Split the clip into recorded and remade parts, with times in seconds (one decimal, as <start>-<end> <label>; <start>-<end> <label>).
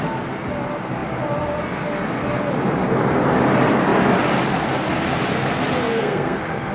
0.0-5.9 recorded; 5.9-6.7 remade